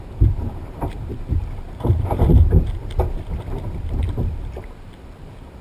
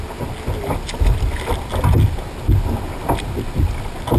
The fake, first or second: first